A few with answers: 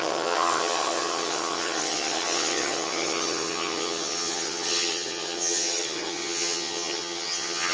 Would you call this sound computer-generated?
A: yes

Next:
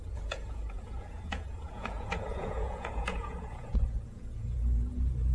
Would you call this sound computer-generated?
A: yes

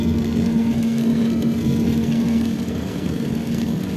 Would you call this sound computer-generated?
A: yes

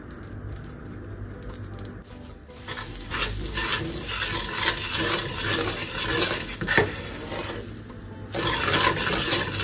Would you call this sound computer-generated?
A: no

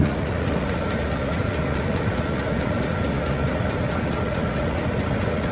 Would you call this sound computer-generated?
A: yes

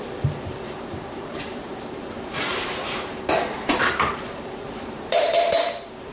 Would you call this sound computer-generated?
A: yes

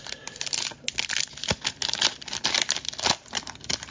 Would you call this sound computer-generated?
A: no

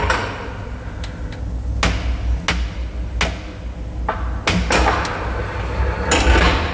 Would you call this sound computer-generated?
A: no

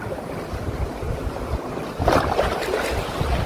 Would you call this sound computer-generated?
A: no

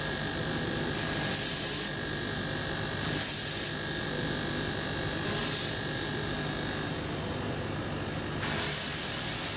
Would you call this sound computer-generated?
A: no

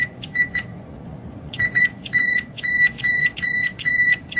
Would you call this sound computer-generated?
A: yes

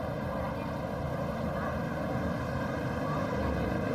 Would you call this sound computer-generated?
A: no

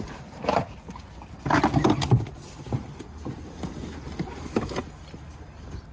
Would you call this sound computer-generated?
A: no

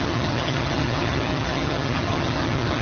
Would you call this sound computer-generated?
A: yes